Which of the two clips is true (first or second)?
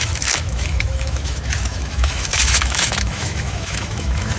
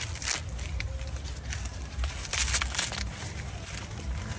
second